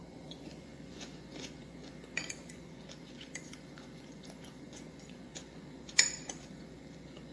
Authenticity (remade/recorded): remade